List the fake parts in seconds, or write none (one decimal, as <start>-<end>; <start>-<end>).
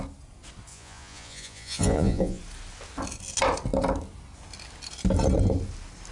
0.7-2.4